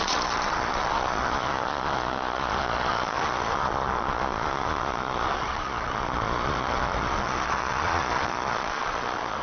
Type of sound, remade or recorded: remade